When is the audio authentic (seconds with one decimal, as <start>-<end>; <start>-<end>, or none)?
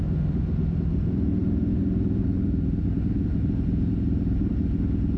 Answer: 0.0-1.4; 4.5-5.2